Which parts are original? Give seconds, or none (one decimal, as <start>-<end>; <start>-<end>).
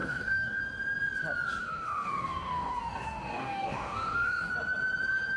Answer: 0.6-1.6; 4.5-5.4